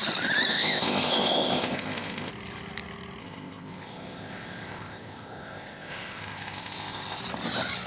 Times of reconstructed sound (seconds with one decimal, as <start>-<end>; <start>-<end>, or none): 0.5-2.3; 3.2-7.2